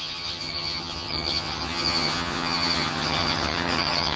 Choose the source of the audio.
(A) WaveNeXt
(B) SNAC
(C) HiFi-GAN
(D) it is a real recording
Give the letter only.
C